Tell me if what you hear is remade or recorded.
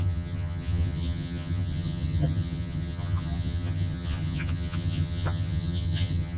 remade